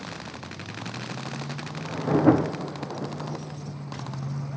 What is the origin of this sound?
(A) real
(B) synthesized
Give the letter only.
A